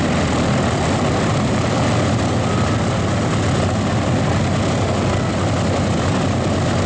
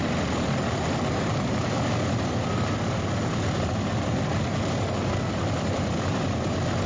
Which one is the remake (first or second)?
second